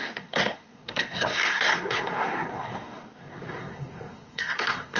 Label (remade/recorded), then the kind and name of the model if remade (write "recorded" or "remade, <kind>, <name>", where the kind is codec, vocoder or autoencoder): remade, codec, SNAC